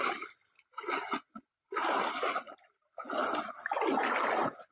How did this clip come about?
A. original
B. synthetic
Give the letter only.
A